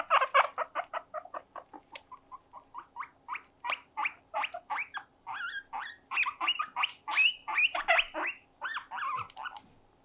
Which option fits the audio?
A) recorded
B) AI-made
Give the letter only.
A